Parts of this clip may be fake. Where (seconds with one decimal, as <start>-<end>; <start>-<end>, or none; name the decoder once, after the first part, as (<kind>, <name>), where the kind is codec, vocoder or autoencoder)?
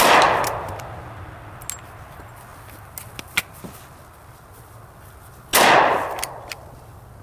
none